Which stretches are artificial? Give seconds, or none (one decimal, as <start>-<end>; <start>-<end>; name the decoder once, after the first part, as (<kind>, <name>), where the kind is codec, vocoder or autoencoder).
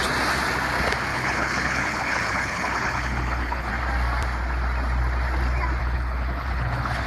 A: 1.1-3.7 (codec, HILCodec); 5.8-7.1